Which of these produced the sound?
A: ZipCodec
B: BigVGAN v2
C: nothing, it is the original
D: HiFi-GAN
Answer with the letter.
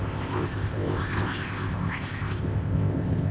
A